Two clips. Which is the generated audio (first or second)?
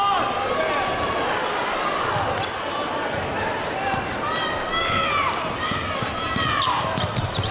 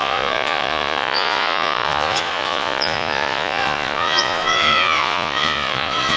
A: second